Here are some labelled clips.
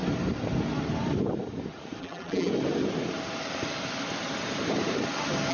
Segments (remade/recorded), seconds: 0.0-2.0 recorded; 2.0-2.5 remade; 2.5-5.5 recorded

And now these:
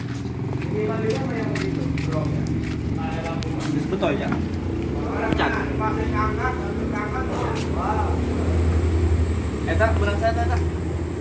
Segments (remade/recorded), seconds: 0.0-3.7 recorded; 3.7-5.8 remade; 5.8-11.2 recorded

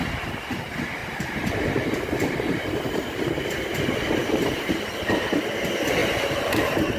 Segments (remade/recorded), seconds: 0.0-1.0 recorded; 1.0-3.4 remade; 3.4-4.2 recorded; 4.2-4.9 remade; 4.9-6.0 recorded; 6.0-7.0 remade

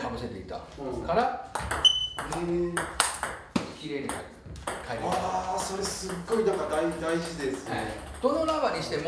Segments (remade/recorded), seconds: 0.0-2.0 recorded; 2.0-4.2 remade; 4.2-9.1 recorded

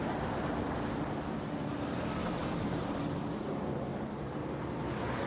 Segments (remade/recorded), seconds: 0.0-2.4 recorded; 2.4-3.0 remade; 3.0-3.9 recorded; 3.9-4.6 remade; 4.6-5.3 recorded

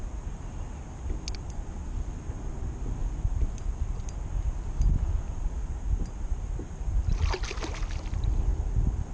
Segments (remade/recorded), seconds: 0.0-9.1 recorded